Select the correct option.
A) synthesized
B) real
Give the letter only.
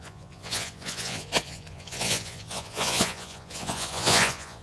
A